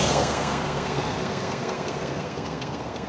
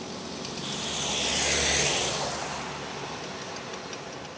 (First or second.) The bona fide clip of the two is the second